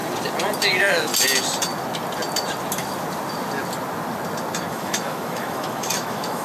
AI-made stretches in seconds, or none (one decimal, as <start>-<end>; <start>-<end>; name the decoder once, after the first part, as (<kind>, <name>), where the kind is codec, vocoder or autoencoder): 0.7-1.1 (autoencoder, DAC-VAE); 4.7-6.4